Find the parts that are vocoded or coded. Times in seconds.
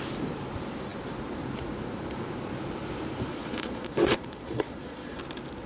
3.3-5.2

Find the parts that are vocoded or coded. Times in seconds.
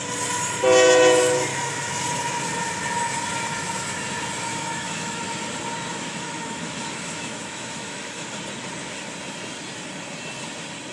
1.5-2.0; 4.5-5.2; 5.9-8.4